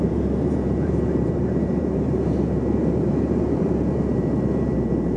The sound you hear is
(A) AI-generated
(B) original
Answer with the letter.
A